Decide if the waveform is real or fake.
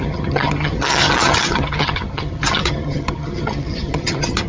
fake